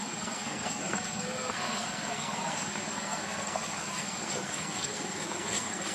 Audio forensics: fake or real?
fake